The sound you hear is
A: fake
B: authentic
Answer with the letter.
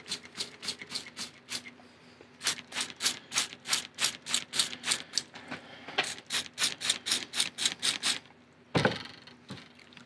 B